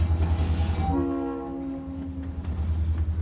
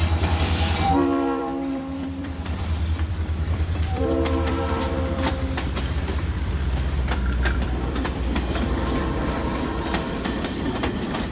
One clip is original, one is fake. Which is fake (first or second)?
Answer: second